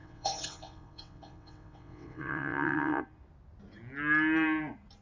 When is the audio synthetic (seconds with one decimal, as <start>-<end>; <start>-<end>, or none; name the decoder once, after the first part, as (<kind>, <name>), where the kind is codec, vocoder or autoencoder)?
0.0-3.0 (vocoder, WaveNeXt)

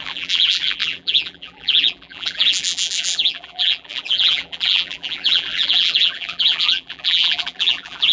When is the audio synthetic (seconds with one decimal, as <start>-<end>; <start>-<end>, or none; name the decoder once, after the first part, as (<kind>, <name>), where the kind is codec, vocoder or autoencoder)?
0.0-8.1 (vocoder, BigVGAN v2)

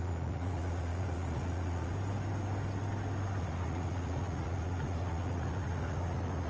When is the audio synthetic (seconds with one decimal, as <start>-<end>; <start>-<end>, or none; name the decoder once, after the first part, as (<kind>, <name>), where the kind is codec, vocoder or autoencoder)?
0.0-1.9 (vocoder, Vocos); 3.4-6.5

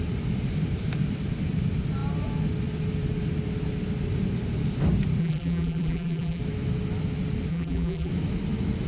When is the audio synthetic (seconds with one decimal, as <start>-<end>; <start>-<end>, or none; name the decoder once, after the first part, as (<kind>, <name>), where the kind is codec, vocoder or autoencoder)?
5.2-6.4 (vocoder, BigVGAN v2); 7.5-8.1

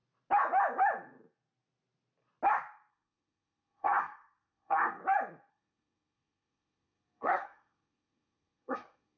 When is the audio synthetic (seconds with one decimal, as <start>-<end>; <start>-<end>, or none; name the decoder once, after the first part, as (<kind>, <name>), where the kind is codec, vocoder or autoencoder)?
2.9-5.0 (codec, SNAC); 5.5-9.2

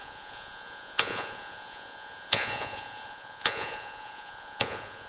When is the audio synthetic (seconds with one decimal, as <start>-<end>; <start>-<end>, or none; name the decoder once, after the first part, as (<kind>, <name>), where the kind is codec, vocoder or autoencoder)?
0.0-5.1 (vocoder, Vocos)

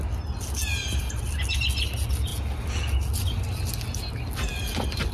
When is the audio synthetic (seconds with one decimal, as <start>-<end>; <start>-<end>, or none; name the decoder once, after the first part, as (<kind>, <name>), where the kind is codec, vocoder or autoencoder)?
none